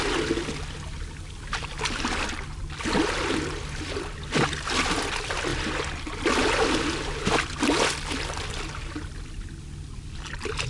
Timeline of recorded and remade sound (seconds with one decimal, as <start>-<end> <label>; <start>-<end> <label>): 0.0-10.7 recorded